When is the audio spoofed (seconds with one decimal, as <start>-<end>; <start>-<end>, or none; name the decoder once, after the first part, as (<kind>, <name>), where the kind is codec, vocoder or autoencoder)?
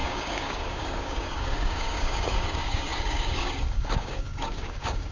0.0-5.1 (codec, DAC)